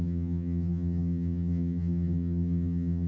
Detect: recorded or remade remade